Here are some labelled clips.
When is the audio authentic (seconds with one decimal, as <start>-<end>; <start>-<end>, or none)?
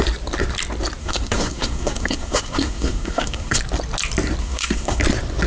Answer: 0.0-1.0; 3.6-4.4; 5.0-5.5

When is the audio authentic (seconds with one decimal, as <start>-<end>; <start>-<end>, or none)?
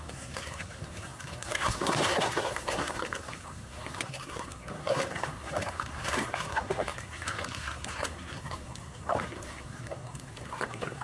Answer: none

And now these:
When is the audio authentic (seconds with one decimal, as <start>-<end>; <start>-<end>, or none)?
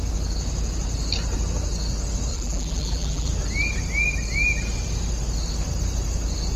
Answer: 0.0-2.3; 3.3-6.6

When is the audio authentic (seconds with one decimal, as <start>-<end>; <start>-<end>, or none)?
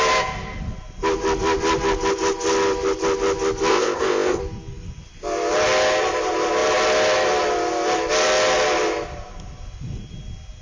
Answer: 0.0-3.7; 4.4-10.6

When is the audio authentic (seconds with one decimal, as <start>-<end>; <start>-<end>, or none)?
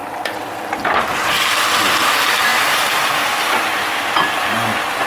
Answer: 0.0-5.1